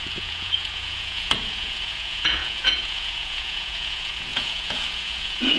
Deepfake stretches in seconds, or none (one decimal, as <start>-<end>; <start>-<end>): 0.0-5.6